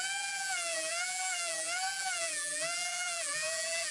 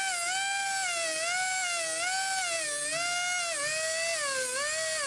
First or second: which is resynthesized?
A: first